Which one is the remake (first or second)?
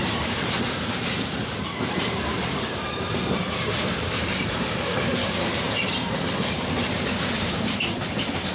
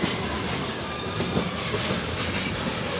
first